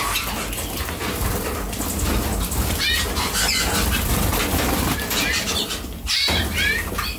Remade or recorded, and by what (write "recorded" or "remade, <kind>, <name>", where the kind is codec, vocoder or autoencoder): recorded